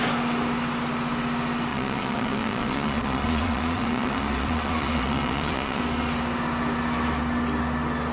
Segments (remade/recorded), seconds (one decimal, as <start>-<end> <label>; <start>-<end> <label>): 0.0-1.7 recorded; 1.7-5.8 remade; 5.8-8.1 recorded